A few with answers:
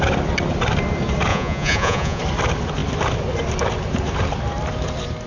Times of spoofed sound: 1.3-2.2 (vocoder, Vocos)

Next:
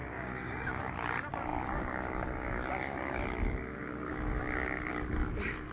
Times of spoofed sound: 0.0-0.8 (codec, DAC)

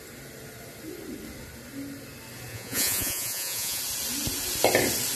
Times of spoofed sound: 2.5-3.8 (vocoder, Vocos)